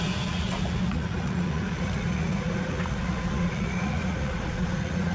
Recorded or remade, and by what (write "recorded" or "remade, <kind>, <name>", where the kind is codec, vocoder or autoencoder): remade, vocoder, Vocos